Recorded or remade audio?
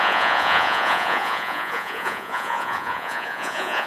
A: remade